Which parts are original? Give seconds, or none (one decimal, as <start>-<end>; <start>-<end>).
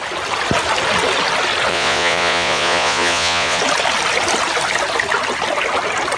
0.0-1.7; 3.6-6.2